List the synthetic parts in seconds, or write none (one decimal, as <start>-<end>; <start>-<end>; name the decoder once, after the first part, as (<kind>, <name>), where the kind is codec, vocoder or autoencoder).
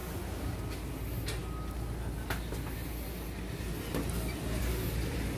0.0-0.6 (vocoder, BigVGAN v2)